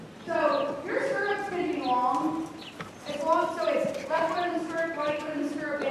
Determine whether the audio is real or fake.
real